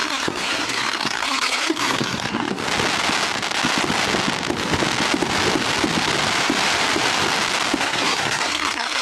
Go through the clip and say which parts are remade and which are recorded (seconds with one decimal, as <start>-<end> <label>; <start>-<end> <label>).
0.0-2.6 remade; 2.6-7.8 recorded; 7.8-9.0 remade